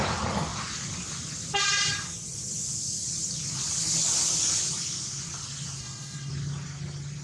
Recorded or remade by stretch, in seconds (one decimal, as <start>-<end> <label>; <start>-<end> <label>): 0.0-5.8 recorded; 5.8-6.3 remade; 6.3-7.2 recorded